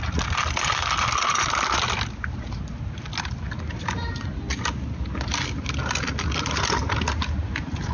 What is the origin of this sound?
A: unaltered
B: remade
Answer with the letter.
A